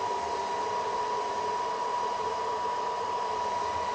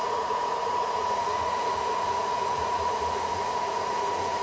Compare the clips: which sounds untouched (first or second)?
first